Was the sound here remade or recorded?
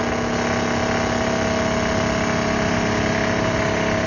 recorded